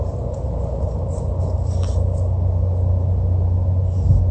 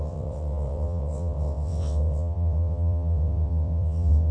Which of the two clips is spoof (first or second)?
second